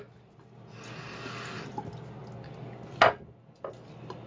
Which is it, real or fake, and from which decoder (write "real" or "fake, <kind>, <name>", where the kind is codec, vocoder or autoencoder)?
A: real